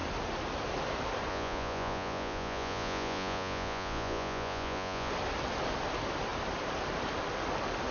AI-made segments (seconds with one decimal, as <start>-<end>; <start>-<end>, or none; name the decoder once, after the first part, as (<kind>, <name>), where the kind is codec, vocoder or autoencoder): 1.3-5.1 (vocoder, Vocos)